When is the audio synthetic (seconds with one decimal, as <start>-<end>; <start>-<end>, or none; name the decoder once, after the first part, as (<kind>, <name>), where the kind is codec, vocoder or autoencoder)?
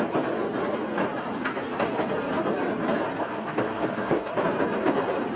3.2-4.3 (codec, SNAC)